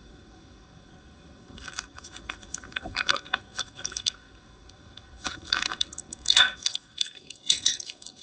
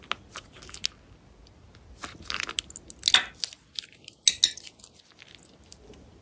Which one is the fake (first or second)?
first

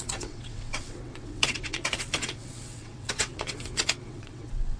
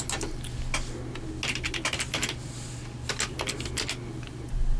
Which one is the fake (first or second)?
first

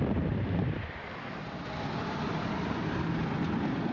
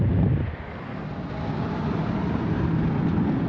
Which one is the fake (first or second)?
first